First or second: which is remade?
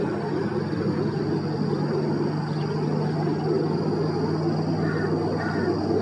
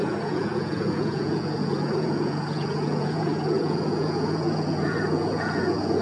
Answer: second